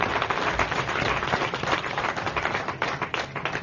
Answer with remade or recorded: recorded